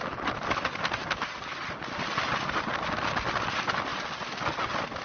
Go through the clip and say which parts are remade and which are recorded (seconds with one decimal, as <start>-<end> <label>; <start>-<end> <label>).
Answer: 0.0-5.0 recorded